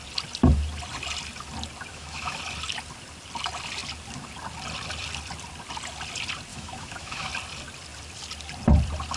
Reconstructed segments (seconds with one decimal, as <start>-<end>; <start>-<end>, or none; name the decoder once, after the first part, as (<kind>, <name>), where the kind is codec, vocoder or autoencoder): 1.9-2.4 (autoencoder, DAC-VAE); 6.5-7.3